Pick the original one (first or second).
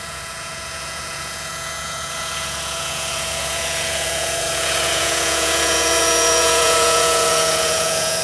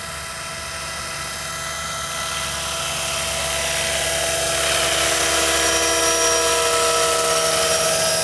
second